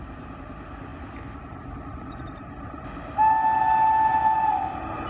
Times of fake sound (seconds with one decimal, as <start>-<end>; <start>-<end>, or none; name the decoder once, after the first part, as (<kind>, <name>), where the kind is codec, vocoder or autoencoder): none